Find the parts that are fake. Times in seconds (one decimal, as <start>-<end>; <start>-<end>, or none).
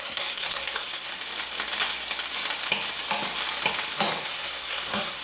0.0-1.1; 4.2-5.2